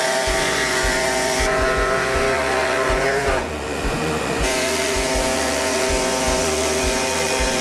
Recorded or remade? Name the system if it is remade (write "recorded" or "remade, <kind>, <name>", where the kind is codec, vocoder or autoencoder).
remade, vocoder, Vocos